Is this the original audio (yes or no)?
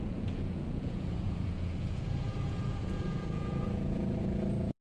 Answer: no